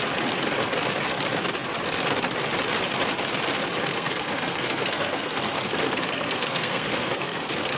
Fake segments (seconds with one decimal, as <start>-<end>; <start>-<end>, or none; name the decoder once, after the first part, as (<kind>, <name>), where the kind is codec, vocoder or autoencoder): 3.9-7.8 (codec, SNAC)